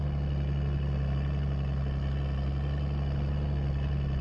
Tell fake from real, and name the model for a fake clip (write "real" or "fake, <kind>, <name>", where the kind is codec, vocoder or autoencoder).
real